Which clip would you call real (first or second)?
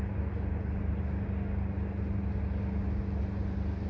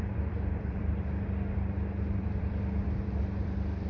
first